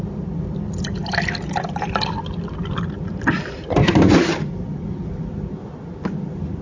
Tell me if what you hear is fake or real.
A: real